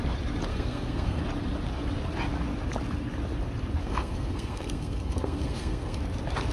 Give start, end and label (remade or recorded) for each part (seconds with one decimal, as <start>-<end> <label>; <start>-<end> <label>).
0.0-0.5 recorded; 0.5-1.2 remade; 1.2-3.8 recorded; 3.8-6.0 remade; 6.0-6.5 recorded